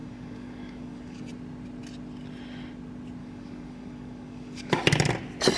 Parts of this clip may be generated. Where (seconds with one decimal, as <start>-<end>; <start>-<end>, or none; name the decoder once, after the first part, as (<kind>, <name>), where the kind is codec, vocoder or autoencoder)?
0.0-1.3 (codec, DAC); 3.2-4.8

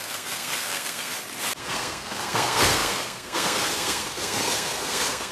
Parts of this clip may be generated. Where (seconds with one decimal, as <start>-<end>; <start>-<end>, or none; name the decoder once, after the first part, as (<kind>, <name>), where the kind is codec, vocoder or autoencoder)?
0.0-1.1 (codec, SNAC); 1.6-5.3